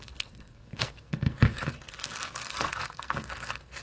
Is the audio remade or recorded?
remade